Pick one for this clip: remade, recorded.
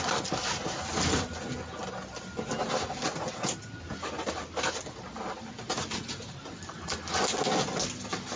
recorded